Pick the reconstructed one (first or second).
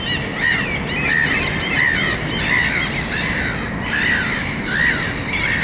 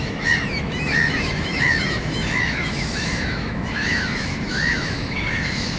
second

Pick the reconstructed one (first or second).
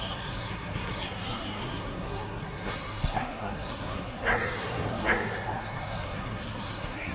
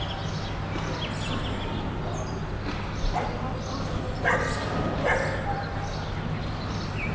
first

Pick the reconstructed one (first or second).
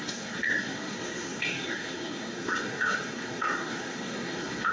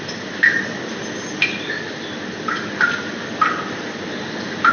first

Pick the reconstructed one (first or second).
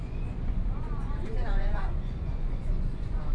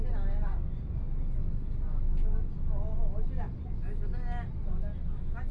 first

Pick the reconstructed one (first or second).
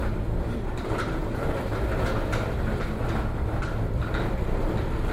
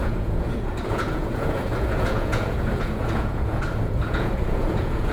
second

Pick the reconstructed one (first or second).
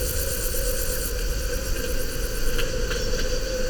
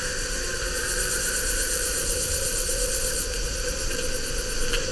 second